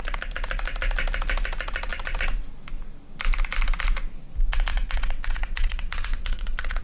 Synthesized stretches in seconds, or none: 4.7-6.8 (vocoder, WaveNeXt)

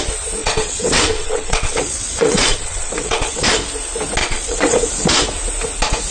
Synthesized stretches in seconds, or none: 0.4-3.4 (vocoder, WaveNeXt); 4.2-4.9

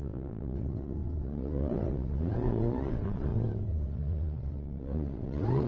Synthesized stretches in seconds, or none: 0.0-5.7 (vocoder, WaveNeXt)

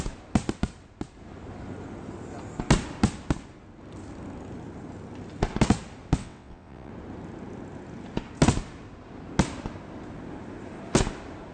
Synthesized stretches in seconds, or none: 6.2-6.9 (vocoder, WaveNeXt)

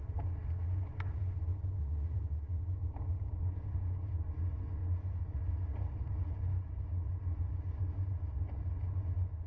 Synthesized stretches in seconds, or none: 1.8-2.6 (vocoder, WaveNeXt)

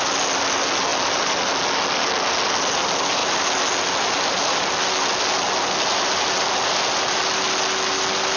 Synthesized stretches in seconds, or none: none

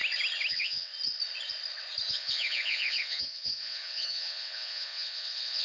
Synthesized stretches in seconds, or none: 0.5-0.9 (vocoder, WaveNeXt); 2.1-5.6